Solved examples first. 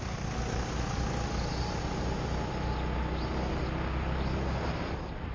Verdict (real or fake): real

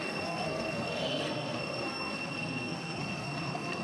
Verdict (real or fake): fake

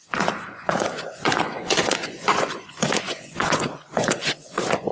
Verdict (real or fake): fake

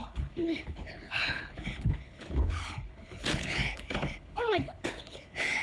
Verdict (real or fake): fake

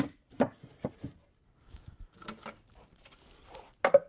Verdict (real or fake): real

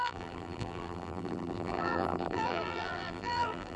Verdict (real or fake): fake